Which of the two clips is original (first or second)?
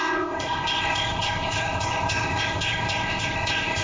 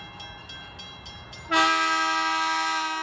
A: second